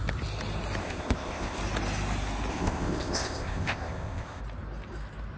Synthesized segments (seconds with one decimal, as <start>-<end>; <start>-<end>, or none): 0.8-1.6; 2.5-4.4